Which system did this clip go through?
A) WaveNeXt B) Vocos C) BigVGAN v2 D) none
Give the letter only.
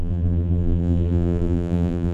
C